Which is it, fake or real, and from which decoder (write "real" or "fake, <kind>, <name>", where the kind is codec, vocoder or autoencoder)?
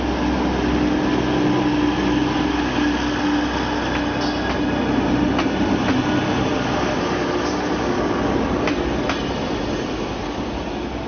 real